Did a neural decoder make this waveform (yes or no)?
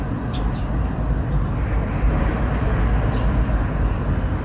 no